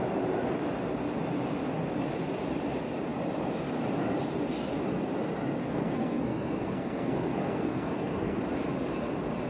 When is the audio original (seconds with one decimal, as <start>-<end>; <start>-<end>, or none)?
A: 0.0-5.6; 8.4-9.5